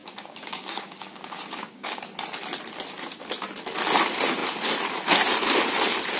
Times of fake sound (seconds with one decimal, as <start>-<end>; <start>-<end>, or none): 0.0-2.0